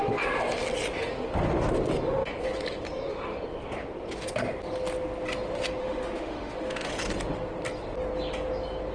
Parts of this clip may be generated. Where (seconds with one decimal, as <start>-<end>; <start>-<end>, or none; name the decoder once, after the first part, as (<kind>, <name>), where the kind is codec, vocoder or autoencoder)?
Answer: 5.8-6.9 (autoencoder, DAC-VAE)